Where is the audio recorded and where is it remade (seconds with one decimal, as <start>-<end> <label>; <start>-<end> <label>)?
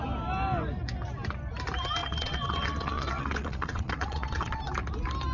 0.0-2.0 recorded; 2.0-4.6 remade; 4.6-5.3 recorded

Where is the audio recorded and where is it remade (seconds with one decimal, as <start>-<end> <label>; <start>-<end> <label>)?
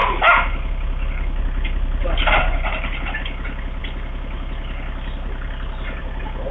0.0-6.5 recorded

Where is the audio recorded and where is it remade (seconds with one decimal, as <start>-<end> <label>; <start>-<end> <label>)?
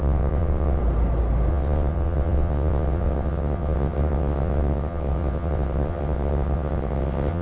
0.0-0.8 remade; 0.8-1.5 recorded; 1.5-7.4 remade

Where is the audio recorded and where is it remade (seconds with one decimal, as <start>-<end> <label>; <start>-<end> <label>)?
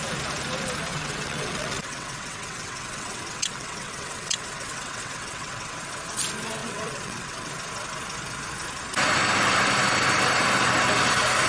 0.0-0.9 recorded; 0.9-5.8 remade; 5.8-6.6 recorded; 6.6-7.5 remade; 7.5-11.5 recorded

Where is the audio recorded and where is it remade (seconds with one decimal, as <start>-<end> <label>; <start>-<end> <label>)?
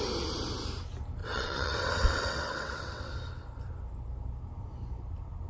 0.0-1.2 recorded; 1.2-3.1 remade; 3.1-5.5 recorded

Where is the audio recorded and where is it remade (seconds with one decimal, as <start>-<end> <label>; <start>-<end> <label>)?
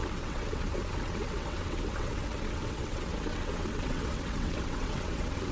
0.0-5.5 remade